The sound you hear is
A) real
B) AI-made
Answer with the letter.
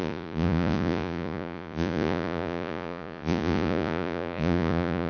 B